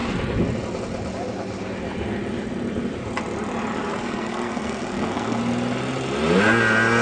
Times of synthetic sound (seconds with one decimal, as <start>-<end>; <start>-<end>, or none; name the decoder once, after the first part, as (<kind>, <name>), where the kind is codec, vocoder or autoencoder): 3.9-5.4 (codec, SNAC)